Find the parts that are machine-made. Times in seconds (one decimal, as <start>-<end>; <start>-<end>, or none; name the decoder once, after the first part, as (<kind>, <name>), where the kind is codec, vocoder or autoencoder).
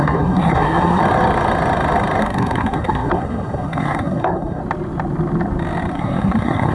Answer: 0.0-1.0 (codec, SNAC); 2.2-4.6; 5.9-6.7